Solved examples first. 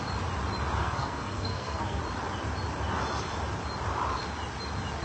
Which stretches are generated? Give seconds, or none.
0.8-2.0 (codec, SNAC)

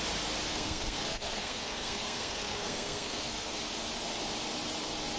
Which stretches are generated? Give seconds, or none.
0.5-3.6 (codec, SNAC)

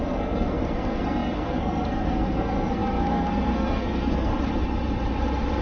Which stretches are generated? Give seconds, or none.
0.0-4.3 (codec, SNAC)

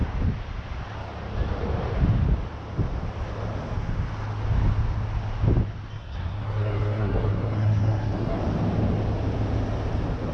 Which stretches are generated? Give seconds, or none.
5.9-8.4 (codec, SNAC)

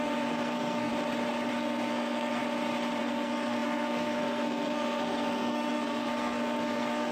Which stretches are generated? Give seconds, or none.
0.0-0.9 (codec, SNAC); 1.5-2.4; 3.0-7.1

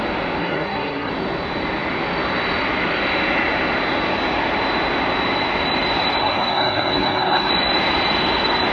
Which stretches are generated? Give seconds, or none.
0.4-1.1 (codec, SNAC); 6.2-7.5

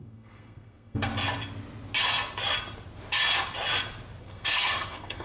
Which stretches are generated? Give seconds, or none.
0.0-1.1 (codec, SNAC); 4.2-5.2

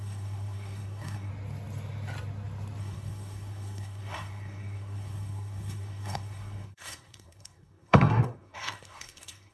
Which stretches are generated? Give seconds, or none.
0.0-1.3 (codec, SNAC); 2.8-9.5